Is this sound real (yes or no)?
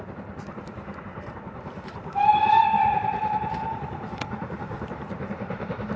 no